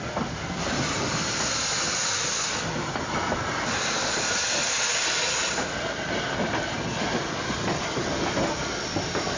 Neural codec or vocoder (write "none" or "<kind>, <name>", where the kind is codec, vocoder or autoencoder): none